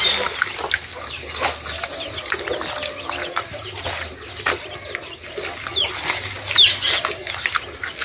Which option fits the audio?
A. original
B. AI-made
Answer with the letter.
A